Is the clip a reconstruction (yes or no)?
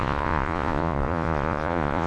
yes